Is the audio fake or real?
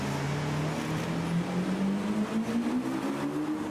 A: real